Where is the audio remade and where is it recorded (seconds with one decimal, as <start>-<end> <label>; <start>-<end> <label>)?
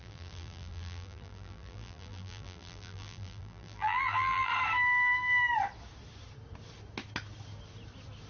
0.0-4.5 remade; 4.5-8.3 recorded